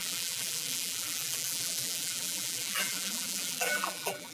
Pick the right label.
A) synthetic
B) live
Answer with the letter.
A